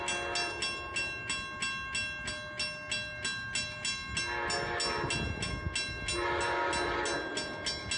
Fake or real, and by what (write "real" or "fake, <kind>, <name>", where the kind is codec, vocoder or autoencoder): real